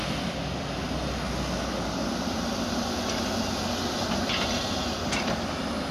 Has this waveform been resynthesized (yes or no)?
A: no